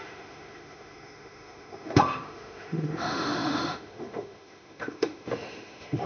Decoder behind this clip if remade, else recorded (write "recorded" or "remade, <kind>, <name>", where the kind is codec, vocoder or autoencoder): remade, autoencoder, DAC-VAE